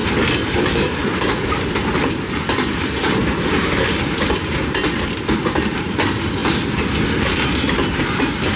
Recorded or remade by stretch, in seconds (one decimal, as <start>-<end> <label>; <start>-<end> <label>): 0.0-0.6 recorded; 0.6-3.2 remade; 3.2-5.4 recorded; 5.4-6.4 remade; 6.4-7.9 recorded; 7.9-8.6 remade